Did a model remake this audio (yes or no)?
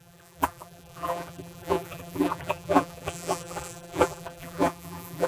yes